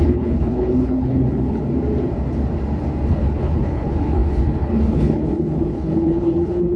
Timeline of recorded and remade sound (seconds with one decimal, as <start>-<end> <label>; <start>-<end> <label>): 0.0-1.6 remade; 1.6-3.1 recorded; 3.1-6.8 remade